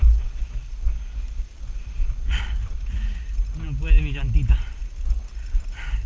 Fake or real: real